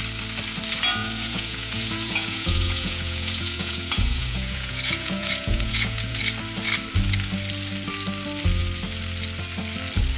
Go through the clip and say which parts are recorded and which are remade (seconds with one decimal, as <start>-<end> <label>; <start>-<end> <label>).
0.0-1.0 recorded; 1.0-6.2 remade; 6.2-10.2 recorded